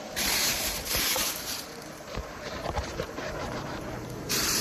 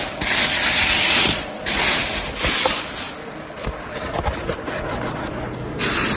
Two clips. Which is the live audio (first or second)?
second